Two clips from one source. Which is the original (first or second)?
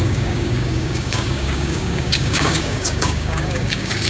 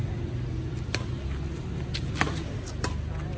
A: second